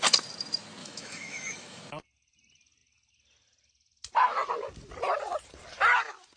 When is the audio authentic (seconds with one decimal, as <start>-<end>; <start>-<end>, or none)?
0.0-0.8; 1.8-6.4